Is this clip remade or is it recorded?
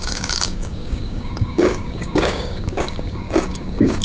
remade